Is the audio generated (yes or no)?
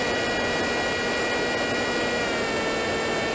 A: no